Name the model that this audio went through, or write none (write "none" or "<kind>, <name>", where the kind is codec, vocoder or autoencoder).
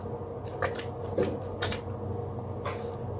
none